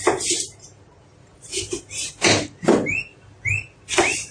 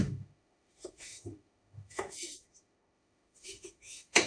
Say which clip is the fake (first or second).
second